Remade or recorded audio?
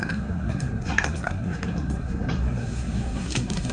remade